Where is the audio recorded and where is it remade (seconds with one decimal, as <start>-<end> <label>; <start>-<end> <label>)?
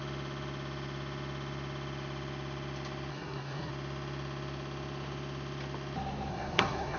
0.0-3.1 recorded; 3.1-3.7 remade; 3.7-6.3 recorded; 6.3-7.0 remade